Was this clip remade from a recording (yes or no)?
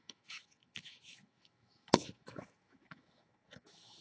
yes